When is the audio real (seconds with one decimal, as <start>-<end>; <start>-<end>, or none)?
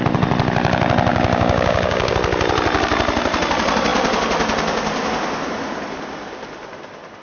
0.0-1.1; 2.1-7.2